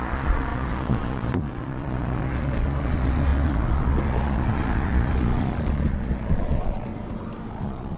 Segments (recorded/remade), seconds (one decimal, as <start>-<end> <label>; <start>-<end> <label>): 0.0-6.9 remade; 6.9-7.5 recorded; 7.5-8.0 remade